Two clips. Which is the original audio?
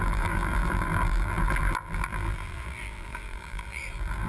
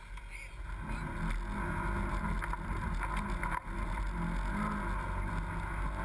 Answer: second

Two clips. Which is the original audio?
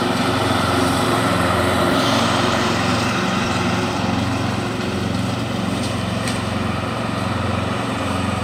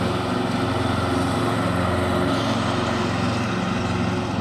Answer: second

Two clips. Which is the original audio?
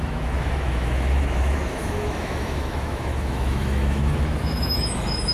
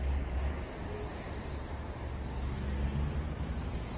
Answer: second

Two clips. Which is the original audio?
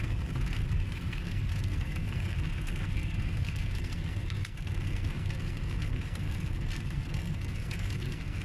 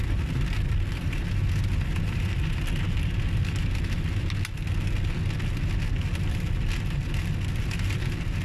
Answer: second